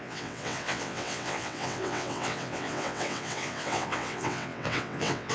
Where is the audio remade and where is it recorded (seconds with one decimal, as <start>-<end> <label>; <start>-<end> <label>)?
0.0-5.3 remade